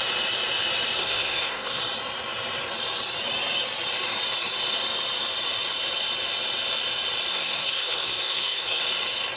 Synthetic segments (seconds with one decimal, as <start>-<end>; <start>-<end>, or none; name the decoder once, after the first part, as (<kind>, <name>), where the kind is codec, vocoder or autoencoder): 1.0-1.8 (codec, SNAC); 7.3-8.8